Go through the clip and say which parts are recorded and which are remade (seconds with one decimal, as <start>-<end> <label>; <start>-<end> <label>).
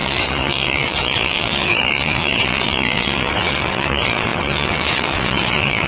0.0-5.9 remade